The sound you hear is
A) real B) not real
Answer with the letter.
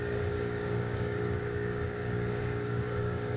B